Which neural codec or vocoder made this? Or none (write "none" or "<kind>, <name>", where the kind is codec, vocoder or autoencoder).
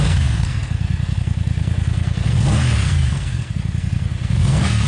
codec, SNAC